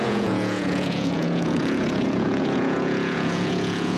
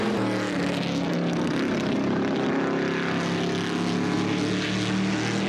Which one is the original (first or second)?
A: second